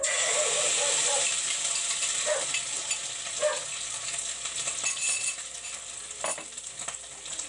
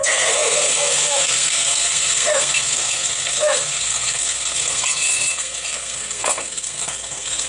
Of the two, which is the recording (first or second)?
first